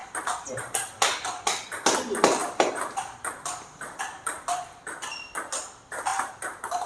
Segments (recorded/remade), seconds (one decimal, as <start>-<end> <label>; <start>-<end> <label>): 0.0-0.7 remade; 0.7-2.4 recorded; 2.4-4.5 remade; 4.5-6.1 recorded; 6.1-6.9 remade